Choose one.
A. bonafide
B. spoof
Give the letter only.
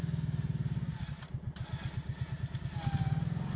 A